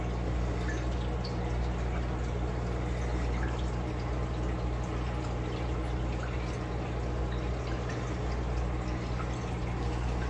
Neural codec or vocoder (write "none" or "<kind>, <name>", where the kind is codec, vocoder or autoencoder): none